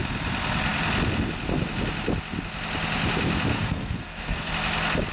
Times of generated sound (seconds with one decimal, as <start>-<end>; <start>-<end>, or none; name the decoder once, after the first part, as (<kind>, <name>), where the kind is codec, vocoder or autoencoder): 3.5-4.5 (codec, SNAC)